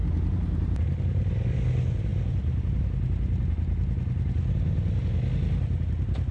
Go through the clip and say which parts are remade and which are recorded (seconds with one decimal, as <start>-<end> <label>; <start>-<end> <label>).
0.0-6.3 recorded

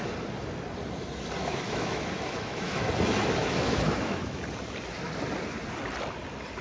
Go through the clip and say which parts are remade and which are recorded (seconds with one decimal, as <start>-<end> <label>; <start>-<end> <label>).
0.0-1.4 recorded; 1.4-2.9 remade; 2.9-3.4 recorded; 3.4-4.4 remade; 4.4-6.6 recorded